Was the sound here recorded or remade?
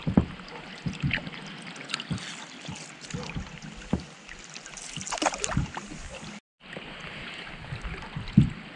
recorded